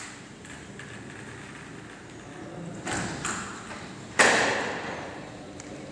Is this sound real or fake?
real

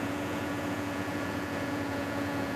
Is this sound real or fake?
fake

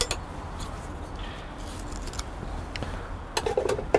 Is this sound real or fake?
real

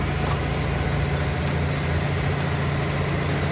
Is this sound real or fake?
real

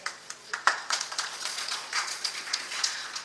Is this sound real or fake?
fake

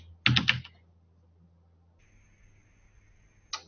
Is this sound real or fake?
real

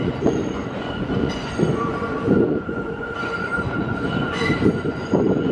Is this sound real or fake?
fake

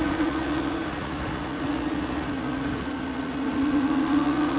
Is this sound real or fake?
fake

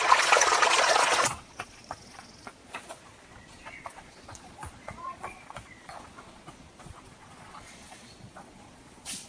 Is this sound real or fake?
fake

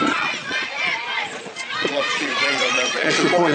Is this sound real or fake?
fake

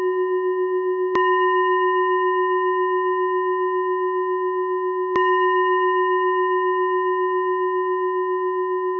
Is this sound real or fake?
real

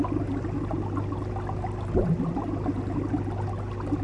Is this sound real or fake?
real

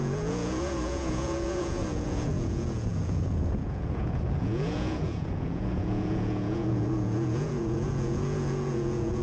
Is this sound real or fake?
fake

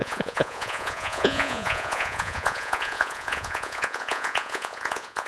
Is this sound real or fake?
fake